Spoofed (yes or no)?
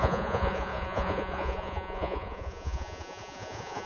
yes